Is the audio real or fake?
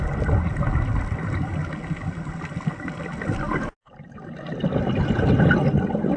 real